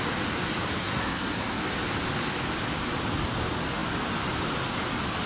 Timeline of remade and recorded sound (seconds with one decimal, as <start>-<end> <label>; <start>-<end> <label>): 0.0-0.8 recorded; 0.8-1.6 remade; 1.6-5.3 recorded